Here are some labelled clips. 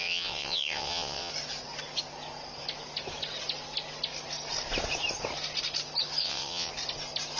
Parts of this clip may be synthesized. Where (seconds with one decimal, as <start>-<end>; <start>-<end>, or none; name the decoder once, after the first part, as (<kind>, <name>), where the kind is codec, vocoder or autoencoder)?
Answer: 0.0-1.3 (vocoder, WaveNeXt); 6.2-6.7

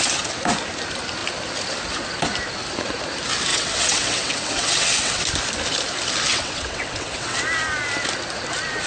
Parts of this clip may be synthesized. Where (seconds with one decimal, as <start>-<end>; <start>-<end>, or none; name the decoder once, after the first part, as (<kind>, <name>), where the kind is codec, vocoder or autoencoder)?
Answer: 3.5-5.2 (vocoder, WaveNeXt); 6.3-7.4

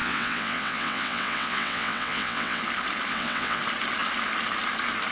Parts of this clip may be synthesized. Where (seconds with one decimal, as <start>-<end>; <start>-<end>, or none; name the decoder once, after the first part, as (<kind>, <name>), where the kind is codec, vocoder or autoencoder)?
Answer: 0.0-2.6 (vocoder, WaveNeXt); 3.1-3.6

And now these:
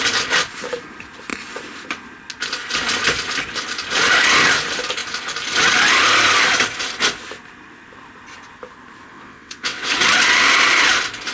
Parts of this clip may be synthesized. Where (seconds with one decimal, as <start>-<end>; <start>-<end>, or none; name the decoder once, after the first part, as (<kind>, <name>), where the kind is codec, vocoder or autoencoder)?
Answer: 9.1-9.9 (vocoder, WaveNeXt)

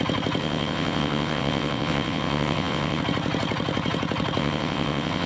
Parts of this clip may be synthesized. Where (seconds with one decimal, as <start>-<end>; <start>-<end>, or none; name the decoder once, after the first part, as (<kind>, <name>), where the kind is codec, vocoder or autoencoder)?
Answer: 0.4-3.0 (vocoder, WaveNeXt); 4.4-5.3